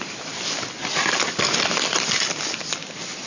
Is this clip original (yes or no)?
yes